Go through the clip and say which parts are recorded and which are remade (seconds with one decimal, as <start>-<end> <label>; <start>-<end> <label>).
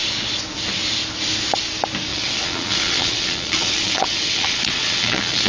0.0-2.1 recorded; 2.1-5.5 remade